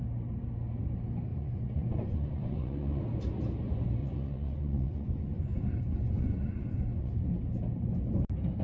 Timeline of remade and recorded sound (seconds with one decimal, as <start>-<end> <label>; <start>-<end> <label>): 0.0-1.3 recorded; 1.3-3.0 remade; 3.0-4.0 recorded; 4.0-7.3 remade; 7.3-8.6 recorded